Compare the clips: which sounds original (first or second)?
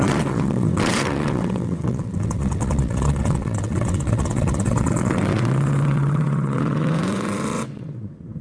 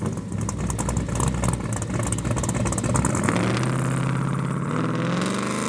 second